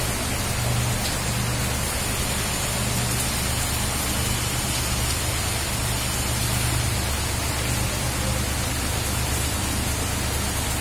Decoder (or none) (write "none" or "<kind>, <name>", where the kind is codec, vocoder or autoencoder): none